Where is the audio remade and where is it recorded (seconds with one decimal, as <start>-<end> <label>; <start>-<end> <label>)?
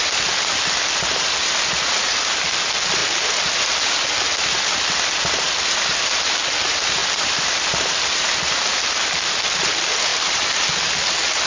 0.0-11.5 remade